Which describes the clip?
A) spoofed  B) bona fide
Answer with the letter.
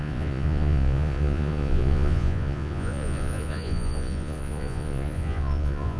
A